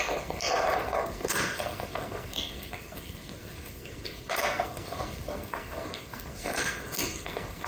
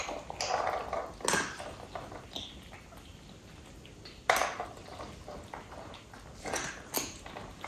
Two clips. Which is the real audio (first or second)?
second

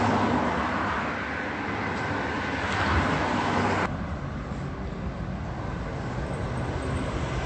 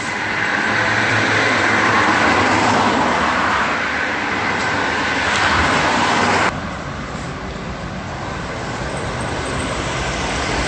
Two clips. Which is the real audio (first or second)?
first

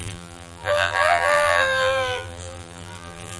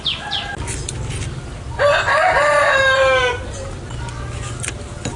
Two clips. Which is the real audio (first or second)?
second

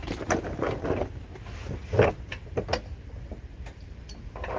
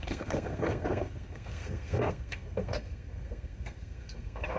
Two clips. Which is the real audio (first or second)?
first